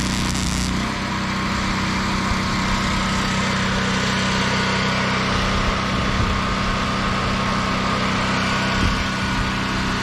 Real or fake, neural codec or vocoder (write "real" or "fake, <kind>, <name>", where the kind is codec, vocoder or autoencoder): real